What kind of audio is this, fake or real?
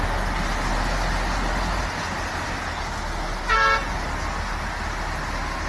real